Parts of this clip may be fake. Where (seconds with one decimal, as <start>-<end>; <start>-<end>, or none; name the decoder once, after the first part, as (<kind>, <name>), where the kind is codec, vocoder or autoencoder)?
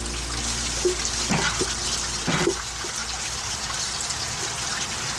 none